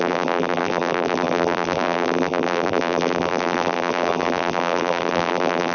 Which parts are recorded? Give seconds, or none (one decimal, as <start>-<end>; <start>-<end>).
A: none